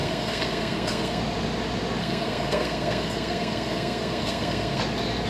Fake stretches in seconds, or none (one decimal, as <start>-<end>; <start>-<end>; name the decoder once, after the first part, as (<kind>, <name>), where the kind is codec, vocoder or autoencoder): 0.0-1.2 (codec, SNAC); 2.0-4.8